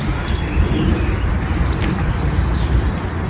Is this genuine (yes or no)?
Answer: yes